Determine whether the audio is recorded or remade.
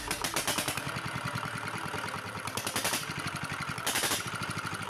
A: recorded